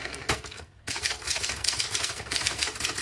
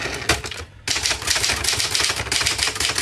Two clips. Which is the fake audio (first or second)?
first